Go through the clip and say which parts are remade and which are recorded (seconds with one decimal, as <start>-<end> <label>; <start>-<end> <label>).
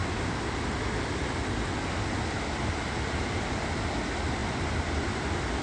0.0-4.4 recorded; 4.4-5.6 remade